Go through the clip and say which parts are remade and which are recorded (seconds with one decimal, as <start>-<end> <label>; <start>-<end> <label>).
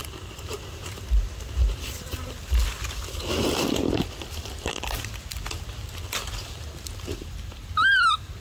0.0-2.6 remade; 2.6-4.3 recorded; 4.3-5.2 remade; 5.2-6.4 recorded; 6.4-8.4 remade